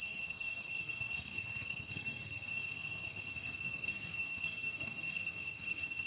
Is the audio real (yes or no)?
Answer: no